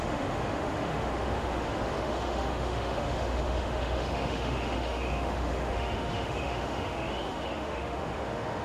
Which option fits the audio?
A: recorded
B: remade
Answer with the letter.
B